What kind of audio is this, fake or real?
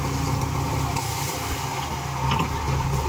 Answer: real